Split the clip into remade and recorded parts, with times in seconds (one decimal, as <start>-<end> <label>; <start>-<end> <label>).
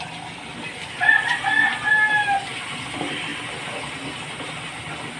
0.0-5.2 recorded